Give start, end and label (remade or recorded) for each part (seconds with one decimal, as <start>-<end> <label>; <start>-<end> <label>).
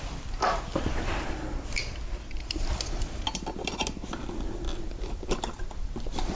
0.0-6.3 recorded